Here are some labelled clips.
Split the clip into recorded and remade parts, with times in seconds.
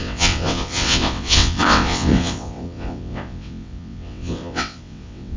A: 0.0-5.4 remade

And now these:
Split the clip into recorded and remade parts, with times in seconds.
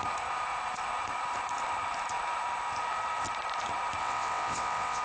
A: 0.0-4.0 recorded; 4.0-5.0 remade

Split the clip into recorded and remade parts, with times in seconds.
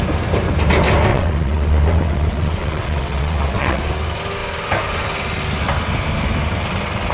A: 0.0-1.1 recorded; 1.1-3.8 remade; 3.8-7.1 recorded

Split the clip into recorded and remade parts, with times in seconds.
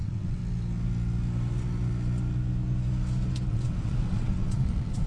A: 0.0-0.4 remade; 0.4-3.5 recorded; 3.5-5.1 remade